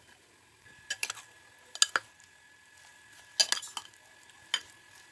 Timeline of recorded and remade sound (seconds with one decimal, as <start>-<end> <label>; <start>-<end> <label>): 0.0-5.1 recorded

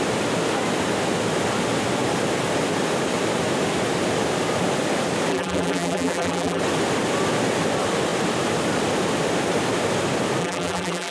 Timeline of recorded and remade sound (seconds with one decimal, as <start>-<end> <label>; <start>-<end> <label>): 0.0-5.3 recorded; 5.3-6.6 remade; 6.6-10.4 recorded; 10.4-11.1 remade

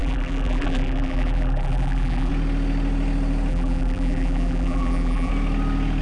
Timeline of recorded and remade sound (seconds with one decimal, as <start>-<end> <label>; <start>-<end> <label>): 0.0-2.3 remade; 2.3-3.5 recorded; 3.5-5.3 remade; 5.3-6.0 recorded

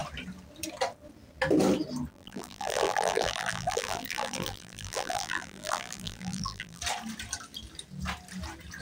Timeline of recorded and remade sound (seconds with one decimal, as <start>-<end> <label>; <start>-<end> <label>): 0.0-2.1 recorded; 2.1-6.8 remade; 6.8-8.8 recorded

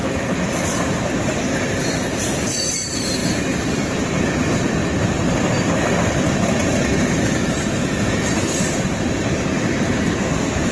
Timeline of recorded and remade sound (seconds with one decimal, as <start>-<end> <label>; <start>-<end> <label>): 0.0-4.4 remade; 4.4-6.6 recorded; 6.6-10.7 remade

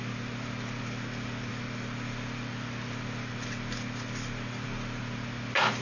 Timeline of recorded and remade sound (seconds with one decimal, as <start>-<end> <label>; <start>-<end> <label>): 0.0-5.8 recorded

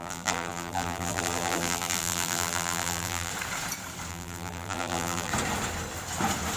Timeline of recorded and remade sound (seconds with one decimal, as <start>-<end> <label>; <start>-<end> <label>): 0.0-3.3 remade; 3.3-4.1 recorded; 4.1-5.3 remade; 5.3-6.6 recorded